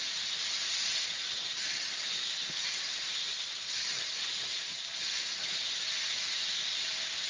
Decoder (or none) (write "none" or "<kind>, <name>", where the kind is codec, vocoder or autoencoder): vocoder, BigVGAN v2